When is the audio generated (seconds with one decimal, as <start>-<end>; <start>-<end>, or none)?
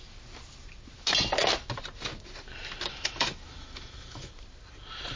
2.9-4.3